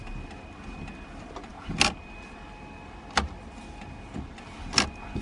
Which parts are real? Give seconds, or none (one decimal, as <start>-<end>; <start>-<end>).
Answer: 0.0-5.2